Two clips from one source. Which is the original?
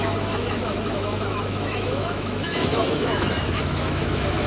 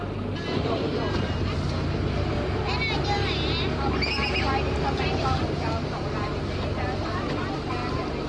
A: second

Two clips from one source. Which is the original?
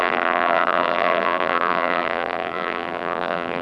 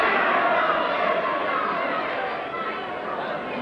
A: second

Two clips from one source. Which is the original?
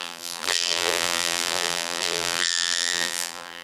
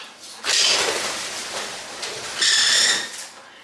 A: second